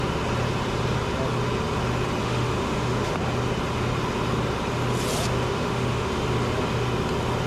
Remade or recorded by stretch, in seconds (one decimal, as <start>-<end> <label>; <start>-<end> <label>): 0.0-2.2 recorded; 2.2-3.1 remade; 3.1-5.5 recorded; 5.5-6.1 remade; 6.1-7.5 recorded